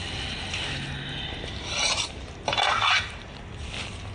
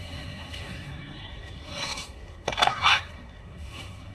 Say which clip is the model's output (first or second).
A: second